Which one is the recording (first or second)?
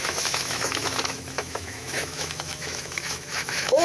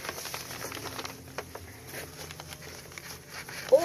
second